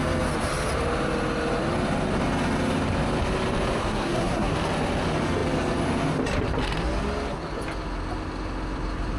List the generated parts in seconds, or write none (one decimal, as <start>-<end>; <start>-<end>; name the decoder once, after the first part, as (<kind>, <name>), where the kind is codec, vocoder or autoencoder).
3.8-4.5 (codec, SNAC)